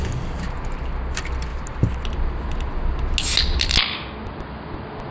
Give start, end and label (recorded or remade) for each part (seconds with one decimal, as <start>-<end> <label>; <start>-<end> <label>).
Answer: 0.0-5.1 recorded